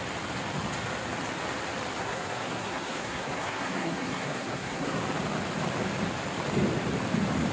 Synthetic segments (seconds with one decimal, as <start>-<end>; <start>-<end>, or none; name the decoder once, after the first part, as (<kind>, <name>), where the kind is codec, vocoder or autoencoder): 2.0-5.0 (codec, SNAC)

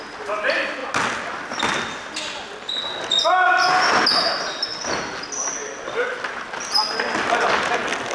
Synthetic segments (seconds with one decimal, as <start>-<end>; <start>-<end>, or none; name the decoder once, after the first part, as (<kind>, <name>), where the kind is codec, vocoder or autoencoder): none

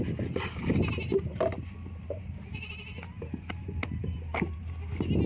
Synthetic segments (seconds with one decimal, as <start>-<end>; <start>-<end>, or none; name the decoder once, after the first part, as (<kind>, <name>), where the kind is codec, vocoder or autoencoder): 1.3-2.8 (vocoder, BigVGAN v2); 3.6-4.6